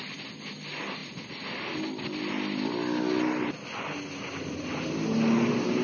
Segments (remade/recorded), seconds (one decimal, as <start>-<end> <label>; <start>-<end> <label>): 0.0-5.8 recorded